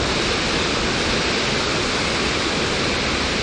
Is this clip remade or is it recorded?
recorded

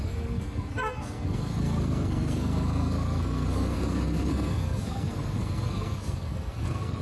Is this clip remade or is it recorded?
remade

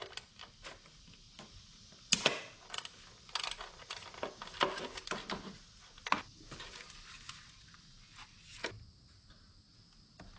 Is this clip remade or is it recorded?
recorded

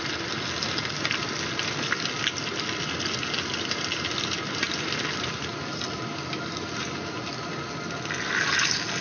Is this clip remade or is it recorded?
recorded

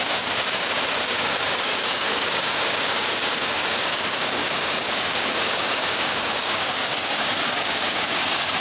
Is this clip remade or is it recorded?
remade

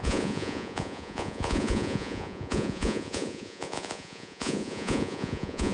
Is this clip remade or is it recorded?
remade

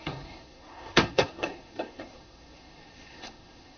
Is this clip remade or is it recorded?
remade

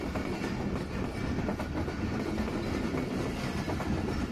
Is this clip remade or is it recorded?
recorded